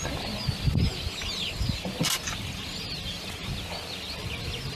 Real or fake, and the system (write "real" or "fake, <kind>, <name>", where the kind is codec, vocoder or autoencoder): real